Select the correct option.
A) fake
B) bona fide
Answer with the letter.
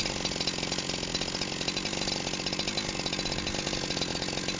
B